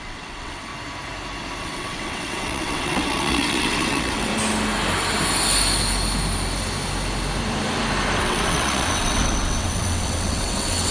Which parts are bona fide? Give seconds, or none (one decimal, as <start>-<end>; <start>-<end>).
0.7-1.6; 4.3-8.2